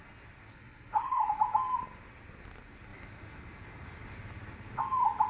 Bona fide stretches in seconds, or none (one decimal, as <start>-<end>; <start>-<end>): 0.0-0.5; 1.3-5.3